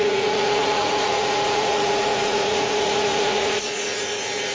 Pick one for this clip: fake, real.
fake